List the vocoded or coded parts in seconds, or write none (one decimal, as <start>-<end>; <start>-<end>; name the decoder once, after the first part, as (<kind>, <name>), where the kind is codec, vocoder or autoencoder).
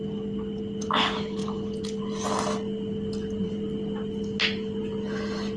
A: none